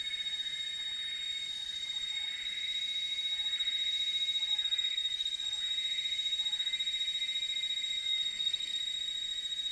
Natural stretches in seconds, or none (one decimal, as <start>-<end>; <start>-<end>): 0.0-4.5; 5.6-8.0; 8.8-9.7